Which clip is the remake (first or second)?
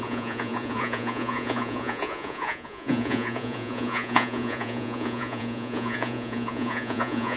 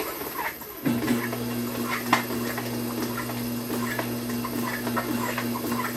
first